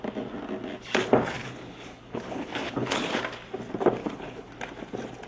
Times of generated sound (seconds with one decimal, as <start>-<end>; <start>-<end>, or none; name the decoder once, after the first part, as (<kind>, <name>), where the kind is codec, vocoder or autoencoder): 1.4-3.2 (codec, HILCodec); 4.0-4.5